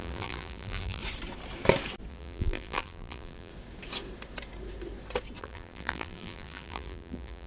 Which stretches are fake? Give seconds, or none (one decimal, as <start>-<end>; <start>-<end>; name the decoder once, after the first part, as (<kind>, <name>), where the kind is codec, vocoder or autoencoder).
0.0-1.0 (vocoder, BigVGAN v2); 2.1-3.5; 5.4-7.5